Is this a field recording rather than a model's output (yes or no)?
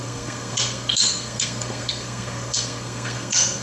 no